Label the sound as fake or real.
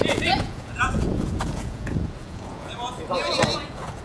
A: fake